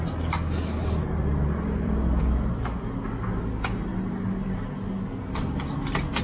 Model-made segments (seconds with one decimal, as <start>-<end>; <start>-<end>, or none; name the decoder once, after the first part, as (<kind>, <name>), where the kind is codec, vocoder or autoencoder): 0.8-2.8 (vocoder, BigVGAN v2)